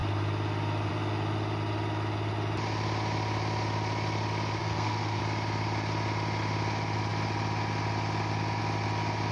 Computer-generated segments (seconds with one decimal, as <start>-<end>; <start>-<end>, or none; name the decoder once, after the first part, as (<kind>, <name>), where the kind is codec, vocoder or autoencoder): 4.6-5.2 (codec, SNAC)